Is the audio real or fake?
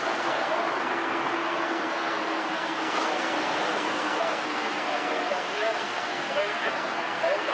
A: fake